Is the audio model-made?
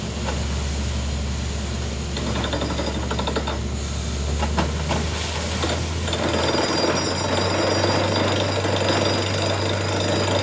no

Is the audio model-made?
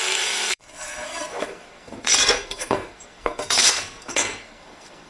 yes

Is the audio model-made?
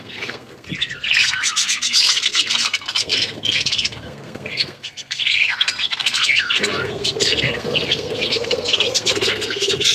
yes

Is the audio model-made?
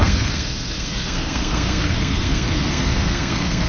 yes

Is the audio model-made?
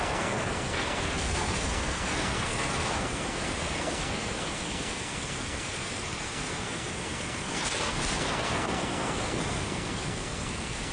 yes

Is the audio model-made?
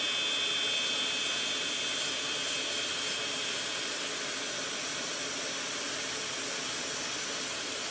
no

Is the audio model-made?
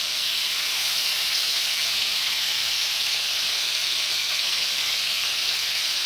yes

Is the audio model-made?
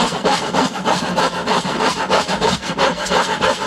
yes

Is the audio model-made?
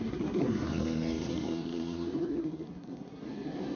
yes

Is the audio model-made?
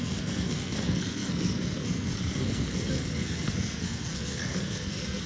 yes